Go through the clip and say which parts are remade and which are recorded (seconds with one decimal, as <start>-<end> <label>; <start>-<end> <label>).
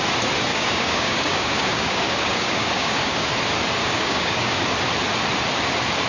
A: 0.0-0.5 recorded; 0.5-3.3 remade; 3.3-3.8 recorded; 3.8-4.6 remade; 4.6-6.1 recorded